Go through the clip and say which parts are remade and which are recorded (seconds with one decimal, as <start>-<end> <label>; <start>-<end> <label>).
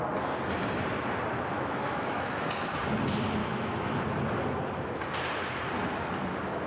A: 0.0-1.5 recorded; 1.5-2.8 remade; 2.8-3.4 recorded; 3.4-4.0 remade; 4.0-6.7 recorded